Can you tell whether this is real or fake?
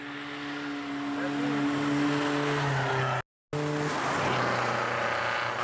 real